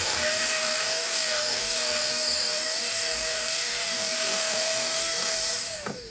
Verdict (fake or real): fake